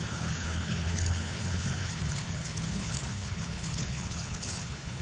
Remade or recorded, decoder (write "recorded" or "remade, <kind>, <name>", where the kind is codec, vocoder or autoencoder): remade, codec, HILCodec